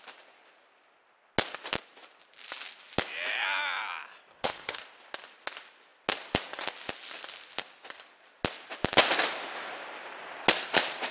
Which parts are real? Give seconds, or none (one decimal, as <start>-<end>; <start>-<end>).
0.0-4.3; 4.8-11.1